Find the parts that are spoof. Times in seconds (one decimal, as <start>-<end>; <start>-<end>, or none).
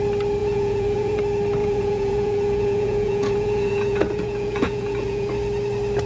0.4-1.2; 1.6-5.3